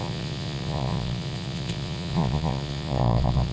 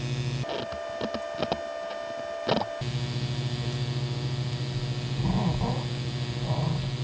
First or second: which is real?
second